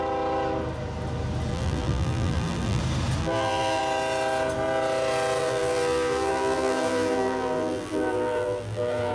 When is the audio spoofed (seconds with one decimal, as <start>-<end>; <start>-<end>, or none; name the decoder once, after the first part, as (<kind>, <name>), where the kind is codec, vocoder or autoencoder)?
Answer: 1.5-2.8 (vocoder, BigVGAN v2); 3.2-3.8; 5.4-9.1